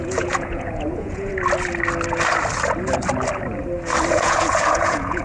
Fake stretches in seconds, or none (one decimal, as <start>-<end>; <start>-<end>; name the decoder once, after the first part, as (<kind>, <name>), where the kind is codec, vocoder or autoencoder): 0.0-1.3 (vocoder, Vocos); 4.1-5.2